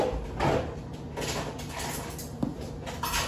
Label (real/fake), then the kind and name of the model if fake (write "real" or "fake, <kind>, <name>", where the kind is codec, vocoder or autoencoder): real